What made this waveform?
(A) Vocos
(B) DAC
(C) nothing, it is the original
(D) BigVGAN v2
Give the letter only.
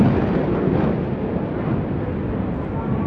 C